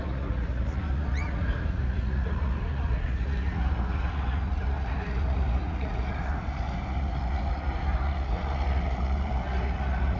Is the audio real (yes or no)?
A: no